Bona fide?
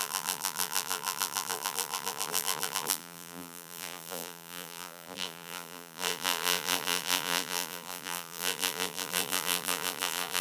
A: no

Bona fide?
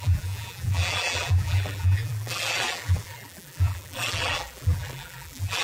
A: no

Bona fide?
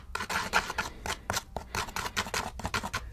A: yes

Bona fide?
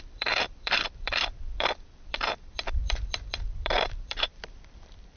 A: no